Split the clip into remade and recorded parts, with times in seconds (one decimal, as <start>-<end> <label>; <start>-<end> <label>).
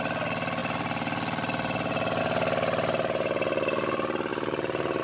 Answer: 0.0-5.0 recorded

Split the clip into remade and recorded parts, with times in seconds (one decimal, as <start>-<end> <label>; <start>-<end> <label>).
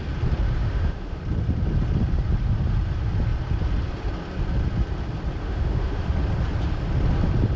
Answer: 0.0-0.6 recorded; 0.6-1.2 remade; 1.2-5.4 recorded; 5.4-6.1 remade; 6.1-7.6 recorded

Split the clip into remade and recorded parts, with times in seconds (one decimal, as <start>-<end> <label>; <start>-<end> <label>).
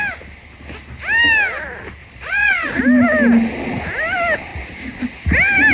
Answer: 0.0-2.0 recorded; 2.0-2.8 remade; 2.8-5.7 recorded